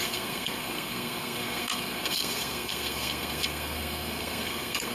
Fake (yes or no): yes